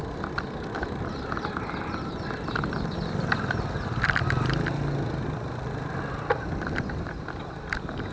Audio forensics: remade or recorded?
recorded